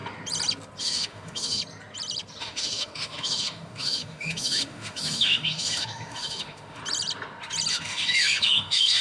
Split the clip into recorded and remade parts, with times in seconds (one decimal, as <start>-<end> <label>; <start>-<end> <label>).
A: 0.0-0.8 recorded; 0.8-1.6 remade; 1.6-2.4 recorded; 2.4-6.8 remade; 6.8-7.7 recorded; 7.7-9.0 remade

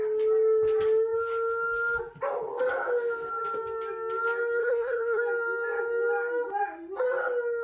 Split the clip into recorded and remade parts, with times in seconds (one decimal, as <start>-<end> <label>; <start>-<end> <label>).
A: 0.0-4.6 recorded; 4.6-5.2 remade; 5.2-7.6 recorded

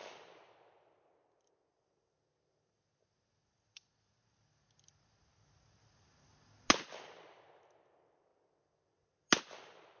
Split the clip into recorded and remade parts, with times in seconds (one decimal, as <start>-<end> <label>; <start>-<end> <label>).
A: 0.0-10.0 recorded

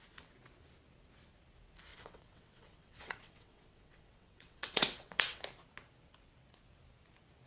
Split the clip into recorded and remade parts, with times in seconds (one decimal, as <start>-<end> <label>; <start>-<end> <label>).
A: 0.0-1.9 recorded; 1.9-5.4 remade; 5.4-7.5 recorded

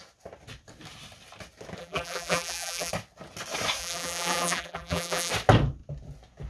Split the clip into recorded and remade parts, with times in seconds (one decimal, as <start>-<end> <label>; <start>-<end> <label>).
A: 0.0-1.8 recorded; 1.8-2.9 remade; 2.9-3.8 recorded; 3.8-5.3 remade; 5.3-6.5 recorded

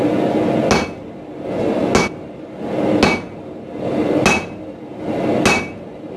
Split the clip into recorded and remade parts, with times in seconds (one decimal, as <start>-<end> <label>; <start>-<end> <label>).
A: 0.0-6.2 recorded